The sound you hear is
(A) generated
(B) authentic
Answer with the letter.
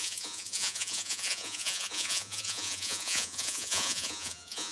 A